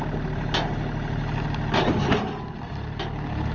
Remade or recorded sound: recorded